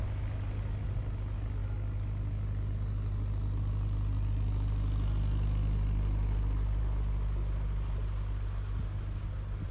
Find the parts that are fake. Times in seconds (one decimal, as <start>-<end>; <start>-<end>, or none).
none

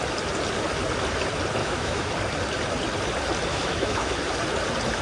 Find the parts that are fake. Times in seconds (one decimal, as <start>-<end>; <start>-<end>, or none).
1.6-2.1; 3.5-4.2

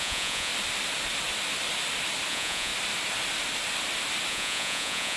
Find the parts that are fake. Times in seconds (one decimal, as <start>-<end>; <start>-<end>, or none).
0.0-0.5; 2.3-2.7; 4.3-5.2

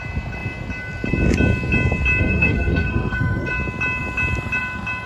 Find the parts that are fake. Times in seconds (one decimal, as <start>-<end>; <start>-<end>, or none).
2.2-3.5

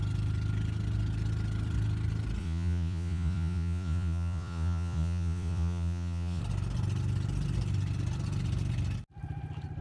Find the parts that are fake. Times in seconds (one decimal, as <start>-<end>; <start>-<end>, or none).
2.4-6.4

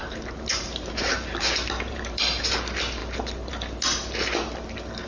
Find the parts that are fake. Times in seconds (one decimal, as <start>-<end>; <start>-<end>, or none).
0.0-2.4